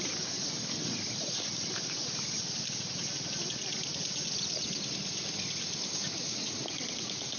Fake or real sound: real